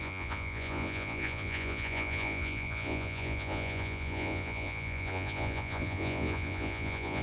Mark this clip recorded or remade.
remade